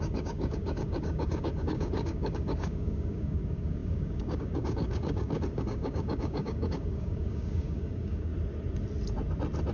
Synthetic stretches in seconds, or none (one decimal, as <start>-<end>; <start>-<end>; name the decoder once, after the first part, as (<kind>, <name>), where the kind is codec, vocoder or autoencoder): 0.0-8.3 (codec, DAC)